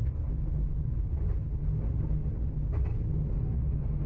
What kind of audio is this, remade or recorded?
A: recorded